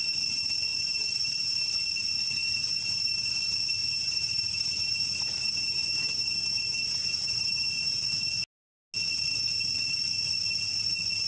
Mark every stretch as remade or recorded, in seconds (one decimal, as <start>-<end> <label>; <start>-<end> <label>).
0.0-0.7 recorded; 0.7-1.7 remade; 1.7-2.4 recorded; 2.4-3.3 remade; 3.3-3.8 recorded; 3.8-8.0 remade; 8.0-11.3 recorded